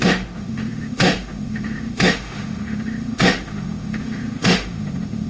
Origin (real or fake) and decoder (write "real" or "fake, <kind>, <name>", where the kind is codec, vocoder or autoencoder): fake, autoencoder, DAC-VAE